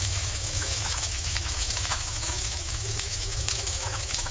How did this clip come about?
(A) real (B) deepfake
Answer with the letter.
B